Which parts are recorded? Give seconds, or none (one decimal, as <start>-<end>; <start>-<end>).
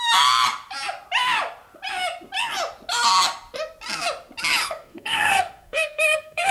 0.0-4.6